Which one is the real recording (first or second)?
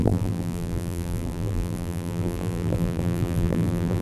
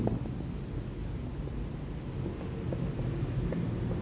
second